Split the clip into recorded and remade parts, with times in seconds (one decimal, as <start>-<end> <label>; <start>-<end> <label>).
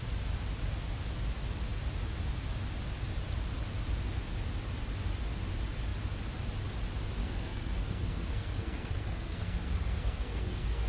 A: 0.0-7.2 recorded; 7.2-10.9 remade